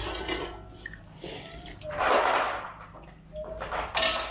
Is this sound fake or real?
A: real